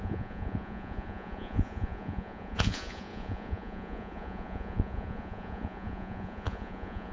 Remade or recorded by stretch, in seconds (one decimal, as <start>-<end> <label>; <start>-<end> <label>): 0.0-7.1 remade